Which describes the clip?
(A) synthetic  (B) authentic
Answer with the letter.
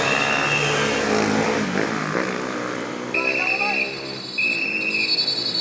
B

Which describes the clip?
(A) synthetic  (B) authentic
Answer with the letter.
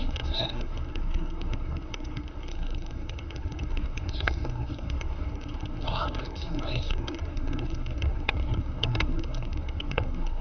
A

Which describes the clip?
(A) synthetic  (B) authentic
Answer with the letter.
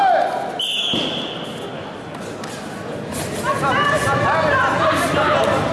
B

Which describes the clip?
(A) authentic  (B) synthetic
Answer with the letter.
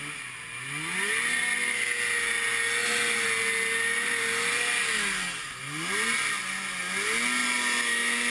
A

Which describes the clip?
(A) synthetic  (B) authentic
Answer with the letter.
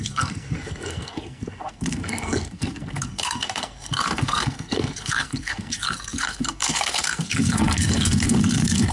A